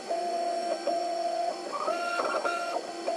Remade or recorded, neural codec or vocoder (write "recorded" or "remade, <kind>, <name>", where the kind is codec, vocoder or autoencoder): remade, vocoder, Vocos